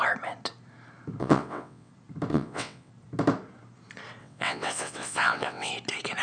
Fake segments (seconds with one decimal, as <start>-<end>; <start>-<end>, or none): 1.2-1.9; 2.3-2.9; 4.2-5.7